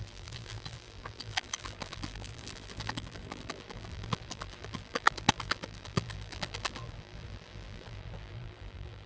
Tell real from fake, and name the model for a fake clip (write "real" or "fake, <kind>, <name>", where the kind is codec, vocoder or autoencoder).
fake, vocoder, BigVGAN v2